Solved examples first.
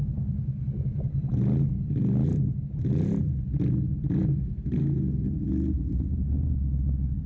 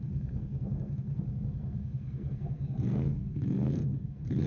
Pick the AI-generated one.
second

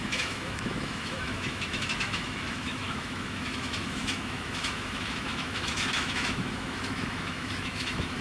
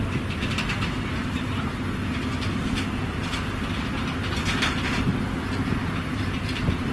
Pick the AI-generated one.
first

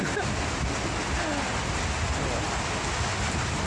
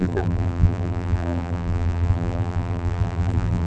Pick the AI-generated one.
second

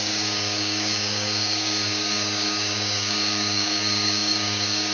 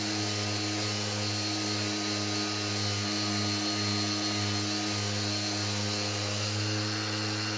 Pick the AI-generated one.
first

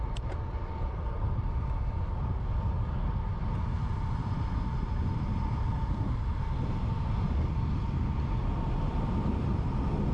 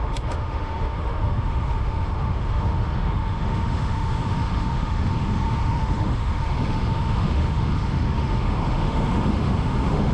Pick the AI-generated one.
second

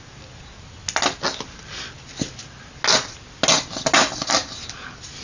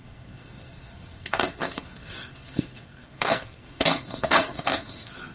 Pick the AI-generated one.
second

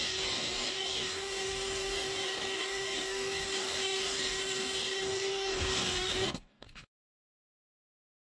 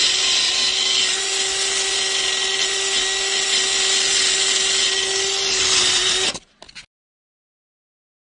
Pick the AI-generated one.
first